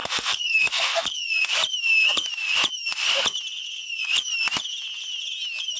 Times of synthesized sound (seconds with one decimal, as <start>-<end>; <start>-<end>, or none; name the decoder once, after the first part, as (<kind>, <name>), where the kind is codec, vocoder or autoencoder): 0.0-1.1 (codec, SNAC)